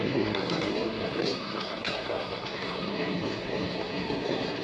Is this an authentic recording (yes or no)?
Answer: no